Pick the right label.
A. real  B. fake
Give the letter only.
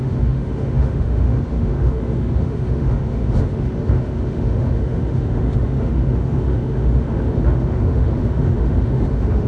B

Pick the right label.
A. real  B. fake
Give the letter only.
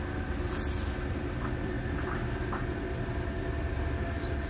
A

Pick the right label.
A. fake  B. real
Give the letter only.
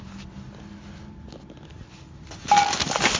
B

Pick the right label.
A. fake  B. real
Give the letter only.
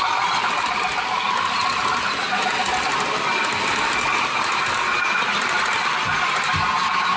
B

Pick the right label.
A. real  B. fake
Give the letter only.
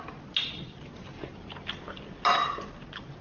A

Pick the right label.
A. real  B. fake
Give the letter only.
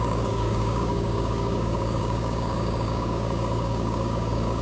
B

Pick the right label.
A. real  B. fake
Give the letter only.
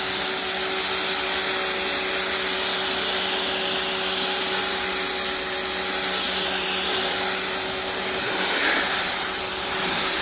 A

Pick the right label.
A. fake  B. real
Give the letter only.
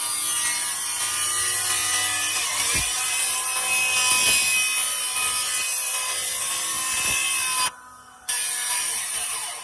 B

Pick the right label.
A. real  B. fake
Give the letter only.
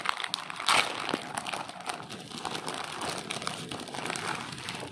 A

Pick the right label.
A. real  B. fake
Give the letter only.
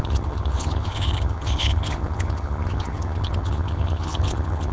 B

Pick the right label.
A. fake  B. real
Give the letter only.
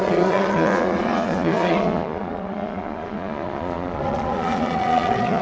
A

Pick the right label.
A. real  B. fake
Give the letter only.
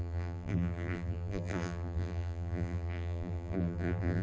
B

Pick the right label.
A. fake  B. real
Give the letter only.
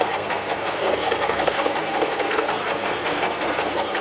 A